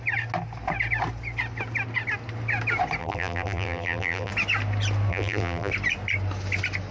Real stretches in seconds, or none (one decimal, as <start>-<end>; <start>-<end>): 0.0-3.0; 4.3-5.1; 5.7-6.9